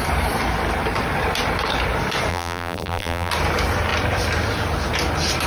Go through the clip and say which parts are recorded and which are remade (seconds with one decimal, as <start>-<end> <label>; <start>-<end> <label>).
0.0-2.3 recorded; 2.3-3.3 remade; 3.3-5.5 recorded